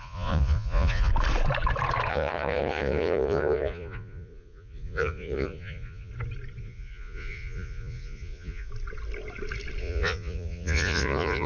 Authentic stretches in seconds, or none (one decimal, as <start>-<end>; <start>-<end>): 1.1-2.1; 6.1-6.6; 8.7-9.8